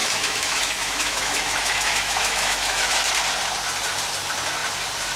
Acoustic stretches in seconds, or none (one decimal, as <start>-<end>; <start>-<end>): 3.1-5.2